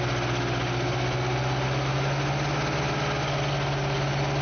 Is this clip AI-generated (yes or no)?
no